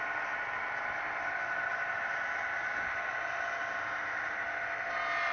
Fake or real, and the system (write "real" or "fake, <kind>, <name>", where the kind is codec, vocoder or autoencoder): real